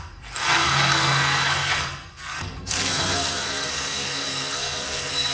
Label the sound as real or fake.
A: fake